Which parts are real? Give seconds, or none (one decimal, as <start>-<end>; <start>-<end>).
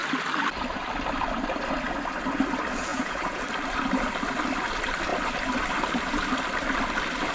0.0-2.9; 3.4-7.3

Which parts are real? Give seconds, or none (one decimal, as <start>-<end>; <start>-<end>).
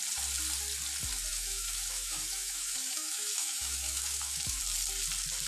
0.0-1.3; 4.6-5.5